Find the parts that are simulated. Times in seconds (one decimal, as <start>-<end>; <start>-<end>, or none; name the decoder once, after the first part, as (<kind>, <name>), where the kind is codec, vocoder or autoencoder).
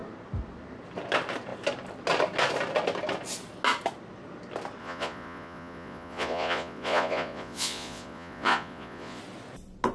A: 4.8-9.2 (vocoder, Vocos)